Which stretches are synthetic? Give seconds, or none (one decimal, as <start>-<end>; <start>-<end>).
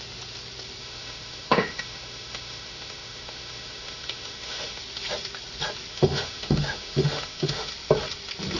0.8-4.8; 5.9-7.7